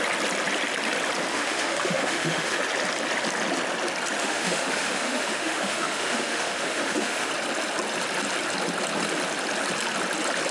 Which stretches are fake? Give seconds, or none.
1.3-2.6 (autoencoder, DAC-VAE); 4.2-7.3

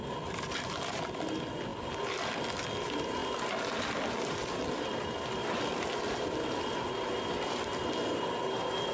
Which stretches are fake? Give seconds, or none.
none

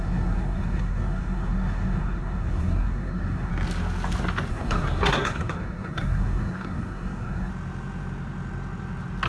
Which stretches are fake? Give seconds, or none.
0.0-3.5 (codec, SNAC); 4.5-7.5